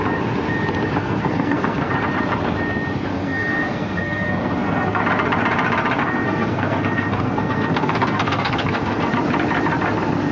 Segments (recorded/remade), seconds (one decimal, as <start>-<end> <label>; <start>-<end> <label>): 0.0-1.0 recorded; 1.0-1.9 remade; 1.9-3.1 recorded; 3.1-5.0 remade; 5.0-6.0 recorded; 6.0-9.1 remade; 9.1-10.3 recorded

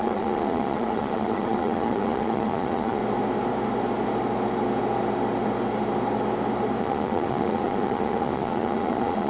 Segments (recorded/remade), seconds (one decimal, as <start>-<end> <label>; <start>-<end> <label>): 0.0-3.0 remade; 3.0-6.8 recorded; 6.8-9.3 remade